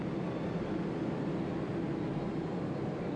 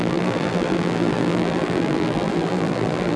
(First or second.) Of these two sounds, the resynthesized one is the second